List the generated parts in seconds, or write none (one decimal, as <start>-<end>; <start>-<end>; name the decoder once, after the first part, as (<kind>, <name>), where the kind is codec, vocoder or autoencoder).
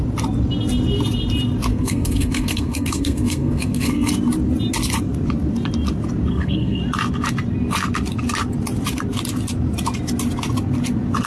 1.7-4.1 (codec, SNAC); 6.3-6.8